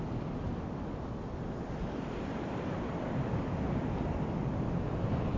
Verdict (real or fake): real